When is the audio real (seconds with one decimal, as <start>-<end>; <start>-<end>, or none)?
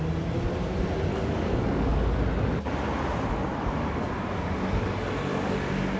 0.0-1.1; 2.2-3.5; 4.1-5.3